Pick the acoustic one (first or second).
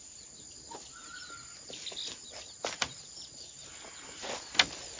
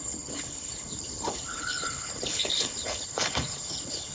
first